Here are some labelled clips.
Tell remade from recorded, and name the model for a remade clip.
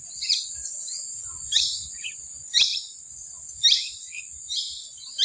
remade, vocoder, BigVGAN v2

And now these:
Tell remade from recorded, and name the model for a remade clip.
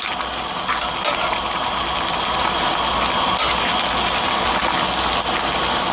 recorded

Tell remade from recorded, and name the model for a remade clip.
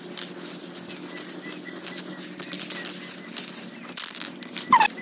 recorded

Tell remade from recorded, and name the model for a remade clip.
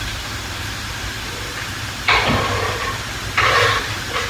remade, vocoder, BigVGAN v2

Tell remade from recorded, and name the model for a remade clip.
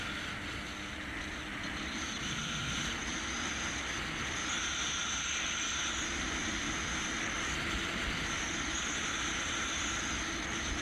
recorded